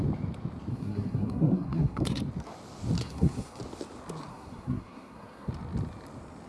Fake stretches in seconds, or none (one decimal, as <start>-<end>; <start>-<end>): 0.7-2.2; 3.0-3.6; 4.3-5.5